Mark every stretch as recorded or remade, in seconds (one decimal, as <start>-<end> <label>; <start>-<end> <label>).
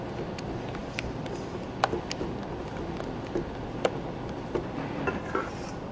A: 0.0-5.9 recorded